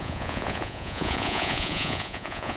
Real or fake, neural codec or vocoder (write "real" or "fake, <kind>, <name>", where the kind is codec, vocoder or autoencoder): fake, vocoder, Vocos